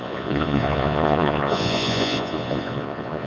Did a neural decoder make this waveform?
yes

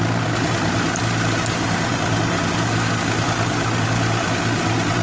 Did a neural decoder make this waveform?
no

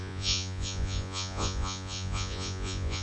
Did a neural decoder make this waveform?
yes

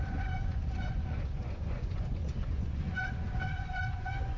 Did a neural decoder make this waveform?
yes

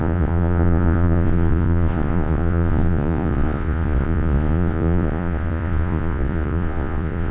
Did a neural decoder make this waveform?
yes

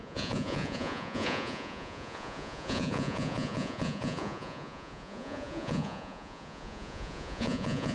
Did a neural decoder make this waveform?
yes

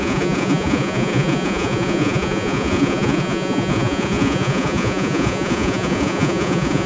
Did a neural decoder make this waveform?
yes